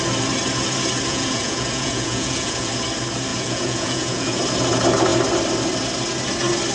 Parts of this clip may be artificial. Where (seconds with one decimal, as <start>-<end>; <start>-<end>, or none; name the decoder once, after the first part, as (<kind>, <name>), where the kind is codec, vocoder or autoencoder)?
1.1-2.7 (vocoder, Vocos); 3.3-4.4